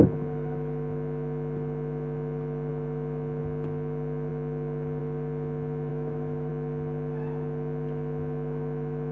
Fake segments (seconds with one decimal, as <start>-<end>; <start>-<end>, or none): 5.9-6.5